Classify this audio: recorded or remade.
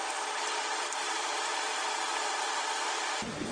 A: recorded